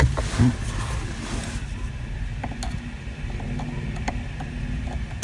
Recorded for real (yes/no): yes